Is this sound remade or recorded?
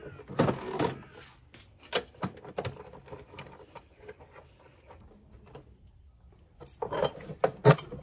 recorded